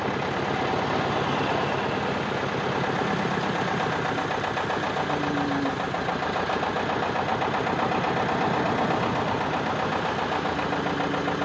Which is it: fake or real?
real